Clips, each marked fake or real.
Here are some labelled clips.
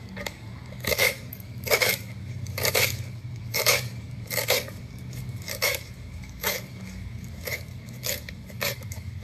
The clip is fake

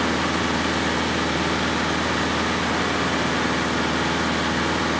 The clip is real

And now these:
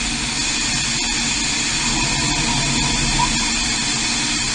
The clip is real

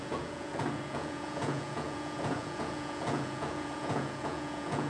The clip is fake